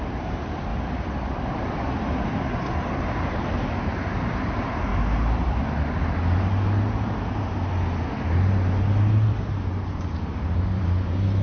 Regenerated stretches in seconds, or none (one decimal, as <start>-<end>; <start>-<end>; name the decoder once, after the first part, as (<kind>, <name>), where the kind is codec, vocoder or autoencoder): 0.0-0.7 (vocoder, BigVGAN v2); 3.8-4.9; 9.3-11.4